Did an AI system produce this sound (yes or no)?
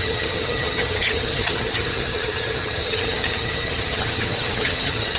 yes